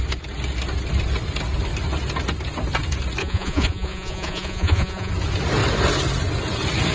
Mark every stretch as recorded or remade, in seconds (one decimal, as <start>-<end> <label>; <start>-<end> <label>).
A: 0.0-3.2 recorded; 3.2-5.1 remade; 5.1-6.9 recorded